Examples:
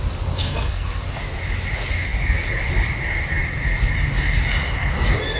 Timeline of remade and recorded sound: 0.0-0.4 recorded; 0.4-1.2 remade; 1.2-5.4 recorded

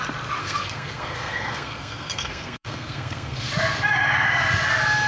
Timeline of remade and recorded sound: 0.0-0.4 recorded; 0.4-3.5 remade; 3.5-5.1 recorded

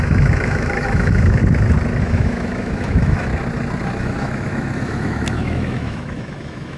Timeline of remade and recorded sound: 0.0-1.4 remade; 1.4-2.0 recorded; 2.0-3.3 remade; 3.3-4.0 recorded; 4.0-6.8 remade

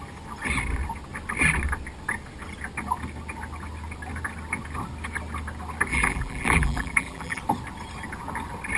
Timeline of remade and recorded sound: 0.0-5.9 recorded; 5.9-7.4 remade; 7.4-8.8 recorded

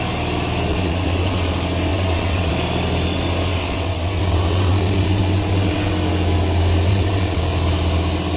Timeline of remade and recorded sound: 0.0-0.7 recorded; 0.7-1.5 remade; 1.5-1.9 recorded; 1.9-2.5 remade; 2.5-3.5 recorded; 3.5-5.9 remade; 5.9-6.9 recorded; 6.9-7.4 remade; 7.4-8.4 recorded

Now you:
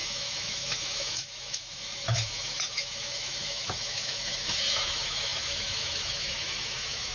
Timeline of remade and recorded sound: 0.0-7.1 remade

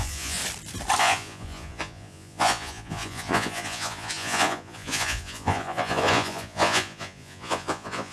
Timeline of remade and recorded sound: 0.0-0.4 remade; 0.4-1.0 recorded; 1.0-8.1 remade

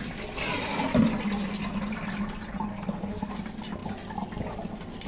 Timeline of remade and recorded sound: 0.0-2.7 recorded; 2.7-3.3 remade; 3.3-5.1 recorded